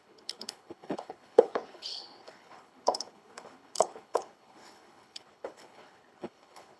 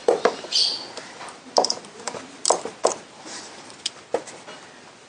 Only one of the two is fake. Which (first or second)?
first